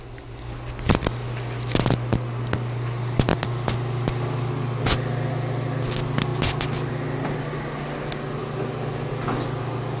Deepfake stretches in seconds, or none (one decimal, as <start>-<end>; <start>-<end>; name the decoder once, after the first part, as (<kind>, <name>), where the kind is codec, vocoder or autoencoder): none